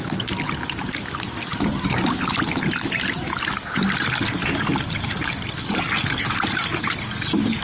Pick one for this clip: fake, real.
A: real